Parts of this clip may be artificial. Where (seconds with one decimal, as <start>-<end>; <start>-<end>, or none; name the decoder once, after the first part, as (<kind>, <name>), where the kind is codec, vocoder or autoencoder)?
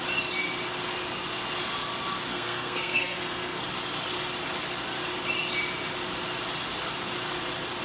2.3-3.6 (codec, SNAC)